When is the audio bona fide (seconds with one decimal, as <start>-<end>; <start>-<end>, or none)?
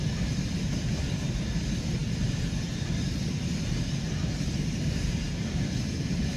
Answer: 0.0-6.4